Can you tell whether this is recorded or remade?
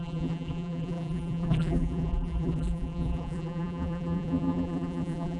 remade